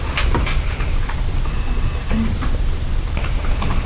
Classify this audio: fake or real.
real